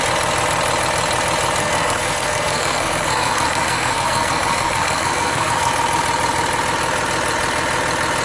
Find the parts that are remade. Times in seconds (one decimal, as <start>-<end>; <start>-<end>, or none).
1.6-5.7